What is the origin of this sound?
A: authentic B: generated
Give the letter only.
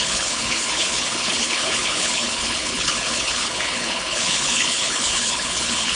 B